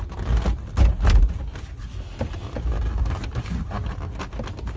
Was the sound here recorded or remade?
recorded